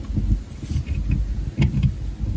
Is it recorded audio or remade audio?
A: recorded